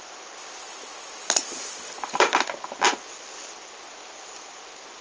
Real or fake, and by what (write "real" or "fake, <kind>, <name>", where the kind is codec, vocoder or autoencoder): real